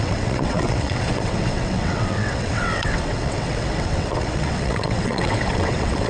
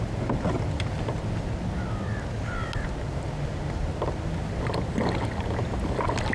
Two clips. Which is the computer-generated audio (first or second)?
first